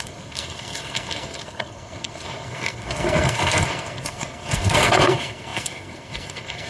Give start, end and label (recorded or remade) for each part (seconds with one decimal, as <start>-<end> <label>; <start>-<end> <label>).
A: 0.0-6.7 remade